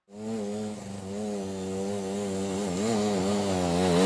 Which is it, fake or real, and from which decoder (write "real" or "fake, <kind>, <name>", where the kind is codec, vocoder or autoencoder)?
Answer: real